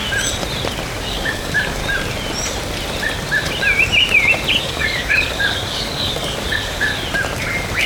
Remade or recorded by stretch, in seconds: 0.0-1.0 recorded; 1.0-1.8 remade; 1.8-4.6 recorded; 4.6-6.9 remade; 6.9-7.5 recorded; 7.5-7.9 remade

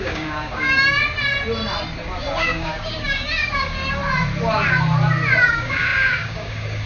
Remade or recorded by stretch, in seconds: 0.0-1.0 remade; 1.0-2.4 recorded; 2.4-4.0 remade; 4.0-5.4 recorded; 5.4-6.9 remade

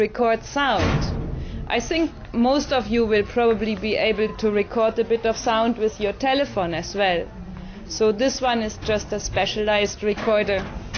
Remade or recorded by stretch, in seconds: 0.0-10.0 recorded; 10.0-10.6 remade; 10.6-11.0 recorded

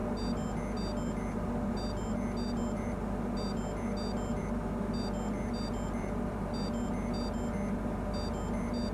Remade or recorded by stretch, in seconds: 0.0-8.9 recorded

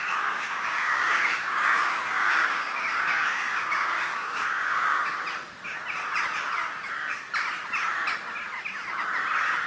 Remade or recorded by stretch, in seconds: 0.0-5.0 remade; 5.0-9.7 recorded

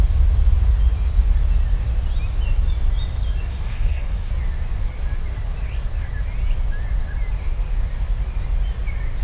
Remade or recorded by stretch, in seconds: 0.0-3.5 recorded; 3.5-4.3 remade; 4.3-9.2 recorded